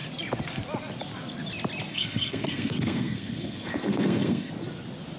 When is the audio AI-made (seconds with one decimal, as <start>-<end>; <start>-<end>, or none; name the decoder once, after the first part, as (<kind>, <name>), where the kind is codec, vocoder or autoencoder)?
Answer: 1.9-4.5 (codec, SNAC)